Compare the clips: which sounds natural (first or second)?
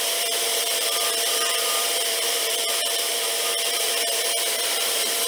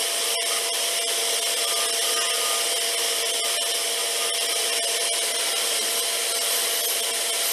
second